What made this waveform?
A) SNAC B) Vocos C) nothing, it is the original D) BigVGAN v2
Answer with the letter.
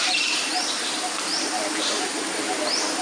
D